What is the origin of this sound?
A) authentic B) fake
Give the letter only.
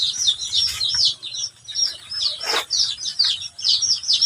B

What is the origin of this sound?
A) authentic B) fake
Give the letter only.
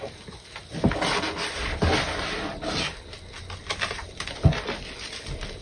A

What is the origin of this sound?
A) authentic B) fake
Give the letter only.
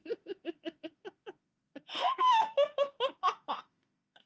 B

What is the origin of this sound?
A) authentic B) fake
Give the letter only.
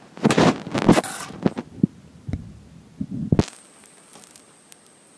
A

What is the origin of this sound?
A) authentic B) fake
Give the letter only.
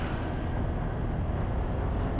A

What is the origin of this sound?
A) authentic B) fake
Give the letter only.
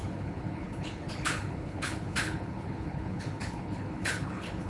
B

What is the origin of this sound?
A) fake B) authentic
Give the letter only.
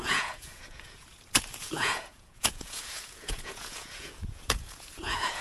A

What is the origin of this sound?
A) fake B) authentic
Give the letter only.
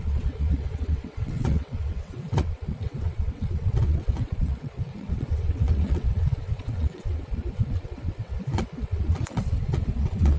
A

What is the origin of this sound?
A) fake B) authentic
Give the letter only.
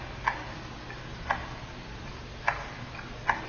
B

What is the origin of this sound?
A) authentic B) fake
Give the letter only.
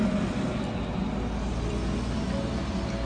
A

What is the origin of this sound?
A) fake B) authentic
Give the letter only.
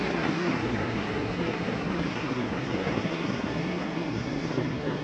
A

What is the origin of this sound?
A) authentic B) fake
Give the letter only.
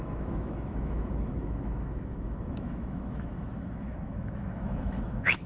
B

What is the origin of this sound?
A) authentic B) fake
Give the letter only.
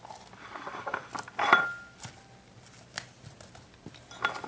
A